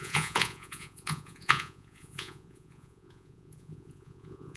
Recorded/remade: remade